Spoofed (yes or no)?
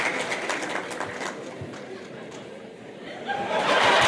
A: no